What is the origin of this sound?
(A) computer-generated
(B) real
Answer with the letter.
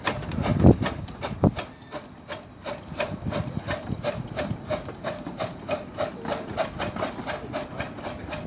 A